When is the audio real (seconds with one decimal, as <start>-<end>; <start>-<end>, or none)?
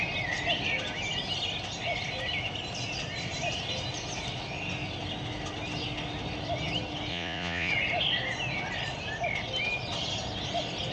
0.0-7.1; 7.7-10.9